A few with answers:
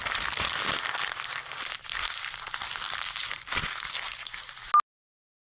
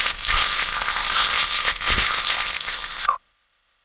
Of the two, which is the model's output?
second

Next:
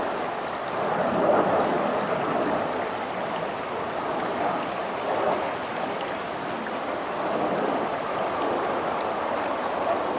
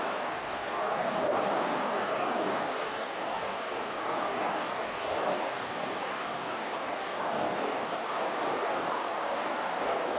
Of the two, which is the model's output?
second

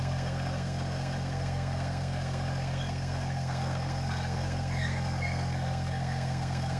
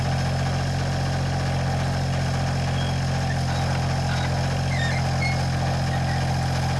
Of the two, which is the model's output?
first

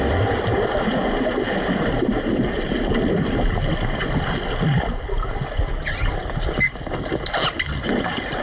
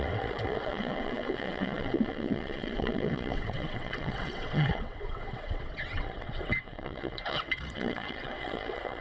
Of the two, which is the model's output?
second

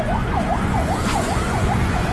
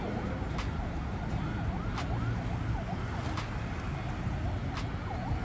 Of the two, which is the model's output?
first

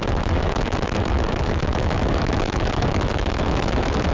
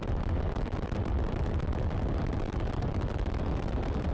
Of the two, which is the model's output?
first